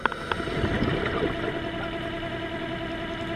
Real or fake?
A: real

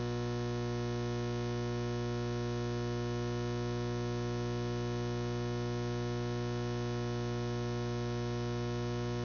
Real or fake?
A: real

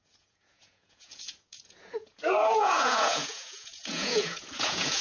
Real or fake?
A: fake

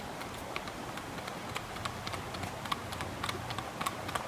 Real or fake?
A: real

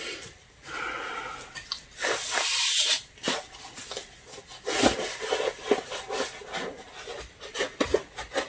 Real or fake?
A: real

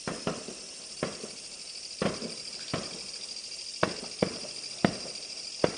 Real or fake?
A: real